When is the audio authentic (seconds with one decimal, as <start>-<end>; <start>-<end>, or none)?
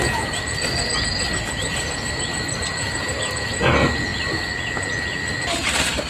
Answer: 0.0-2.7; 3.2-6.1